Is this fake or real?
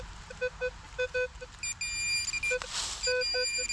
real